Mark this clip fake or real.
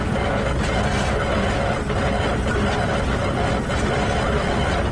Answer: real